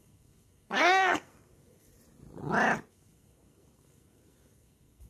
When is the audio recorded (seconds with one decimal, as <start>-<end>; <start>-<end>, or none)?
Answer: 1.9-2.9